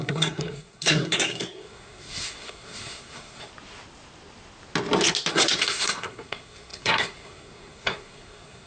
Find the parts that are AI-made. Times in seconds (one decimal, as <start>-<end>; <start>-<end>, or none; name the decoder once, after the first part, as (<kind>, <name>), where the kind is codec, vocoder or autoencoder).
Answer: 0.0-3.5 (codec, SNAC); 5.3-8.7